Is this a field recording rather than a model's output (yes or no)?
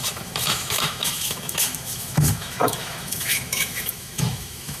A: no